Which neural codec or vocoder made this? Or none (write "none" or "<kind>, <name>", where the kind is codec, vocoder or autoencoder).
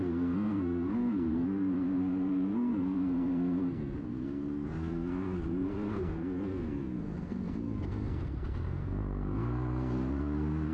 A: codec, SNAC